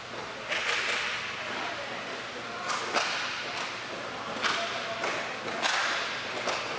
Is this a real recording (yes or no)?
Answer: yes